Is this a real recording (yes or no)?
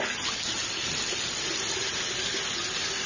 yes